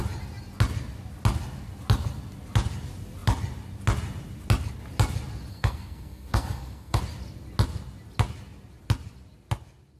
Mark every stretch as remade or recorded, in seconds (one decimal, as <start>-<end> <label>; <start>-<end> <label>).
0.0-5.5 recorded; 5.5-7.0 remade; 7.0-10.0 recorded